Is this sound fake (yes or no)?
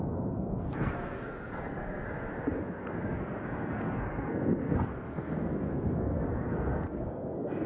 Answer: yes